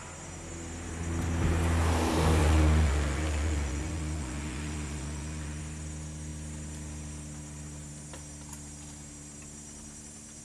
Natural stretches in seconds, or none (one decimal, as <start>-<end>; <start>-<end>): 0.0-2.4; 5.6-10.4